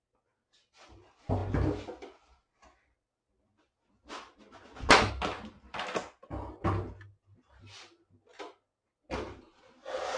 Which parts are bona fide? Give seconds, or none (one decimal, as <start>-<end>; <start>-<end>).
0.0-10.2